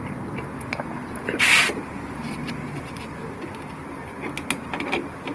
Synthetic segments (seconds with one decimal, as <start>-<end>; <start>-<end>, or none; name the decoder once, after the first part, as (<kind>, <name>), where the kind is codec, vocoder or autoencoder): 1.0-3.0 (vocoder, BigVGAN v2)